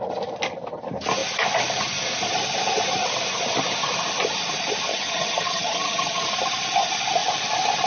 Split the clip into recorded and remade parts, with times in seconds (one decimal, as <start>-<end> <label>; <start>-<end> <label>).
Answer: 0.0-4.9 recorded; 4.9-6.2 remade; 6.2-7.9 recorded